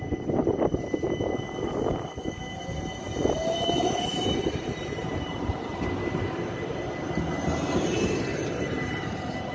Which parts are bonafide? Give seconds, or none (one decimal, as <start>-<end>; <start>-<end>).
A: 0.0-4.1; 5.9-8.3